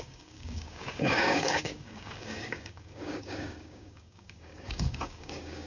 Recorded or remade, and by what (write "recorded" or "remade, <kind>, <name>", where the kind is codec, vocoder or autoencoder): remade, codec, DAC